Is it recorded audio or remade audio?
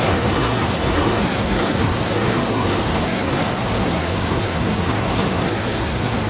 remade